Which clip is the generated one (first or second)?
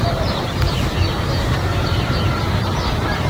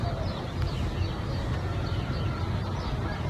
first